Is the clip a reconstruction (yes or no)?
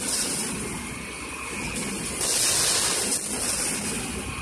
no